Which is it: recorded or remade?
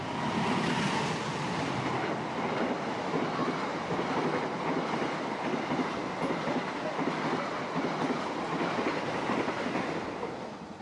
recorded